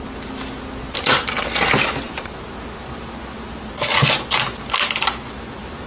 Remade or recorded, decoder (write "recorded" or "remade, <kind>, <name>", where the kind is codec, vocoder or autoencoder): recorded